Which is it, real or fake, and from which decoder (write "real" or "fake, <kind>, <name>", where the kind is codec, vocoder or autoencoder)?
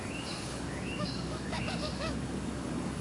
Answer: fake, codec, DAC